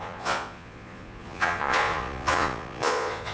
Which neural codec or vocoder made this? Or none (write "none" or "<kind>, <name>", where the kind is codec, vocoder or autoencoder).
vocoder, Vocos